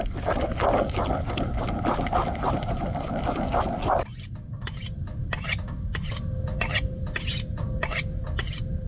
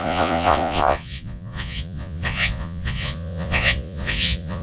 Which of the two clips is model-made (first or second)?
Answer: second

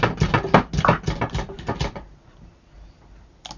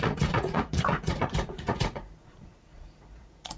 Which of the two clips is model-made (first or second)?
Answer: second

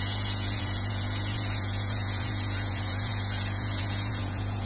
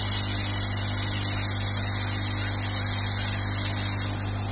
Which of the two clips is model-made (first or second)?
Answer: first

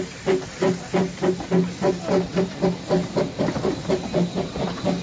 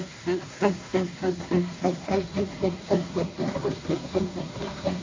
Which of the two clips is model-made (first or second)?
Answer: second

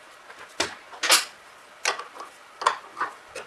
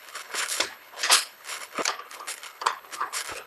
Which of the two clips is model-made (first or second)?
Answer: second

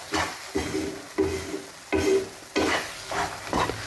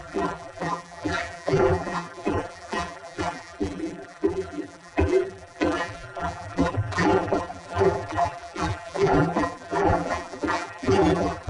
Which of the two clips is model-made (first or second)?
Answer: second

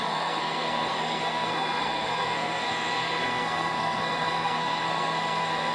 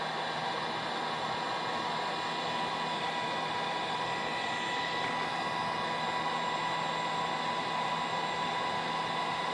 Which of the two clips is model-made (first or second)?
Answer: first